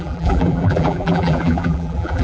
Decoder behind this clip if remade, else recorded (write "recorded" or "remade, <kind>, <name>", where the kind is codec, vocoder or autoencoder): remade, vocoder, BigVGAN v2